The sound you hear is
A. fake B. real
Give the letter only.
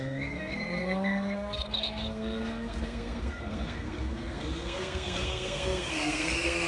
A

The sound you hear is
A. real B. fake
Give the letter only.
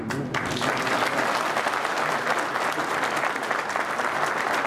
A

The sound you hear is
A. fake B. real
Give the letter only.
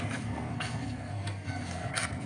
A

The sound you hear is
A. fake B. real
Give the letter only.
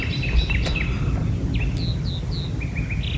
B